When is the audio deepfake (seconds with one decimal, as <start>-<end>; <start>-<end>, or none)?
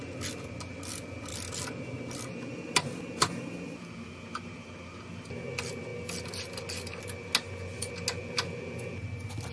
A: none